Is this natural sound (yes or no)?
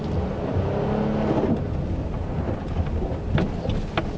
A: yes